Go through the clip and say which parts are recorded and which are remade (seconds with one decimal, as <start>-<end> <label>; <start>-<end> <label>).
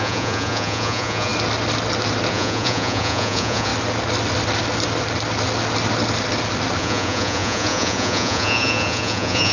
0.0-1.3 remade; 1.3-2.3 recorded; 2.3-3.7 remade; 3.7-6.8 recorded; 6.8-9.5 remade